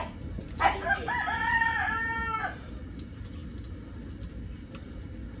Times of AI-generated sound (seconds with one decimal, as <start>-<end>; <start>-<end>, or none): none